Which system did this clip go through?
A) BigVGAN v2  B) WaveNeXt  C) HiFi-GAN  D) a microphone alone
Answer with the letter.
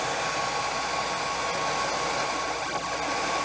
D